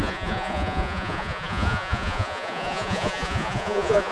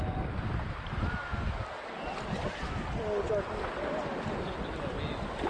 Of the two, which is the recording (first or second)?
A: second